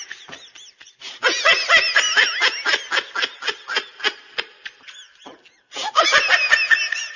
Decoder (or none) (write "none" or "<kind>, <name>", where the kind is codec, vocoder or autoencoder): none